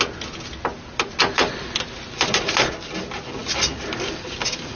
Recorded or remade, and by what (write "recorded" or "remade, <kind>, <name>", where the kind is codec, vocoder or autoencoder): recorded